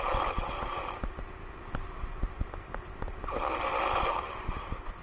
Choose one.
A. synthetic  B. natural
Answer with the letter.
B